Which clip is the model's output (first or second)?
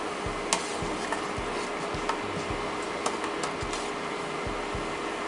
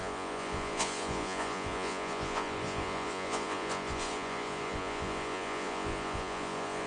second